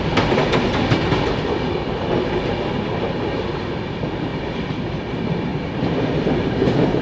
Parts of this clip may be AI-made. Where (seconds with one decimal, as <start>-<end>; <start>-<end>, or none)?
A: 4.3-5.1; 5.5-7.0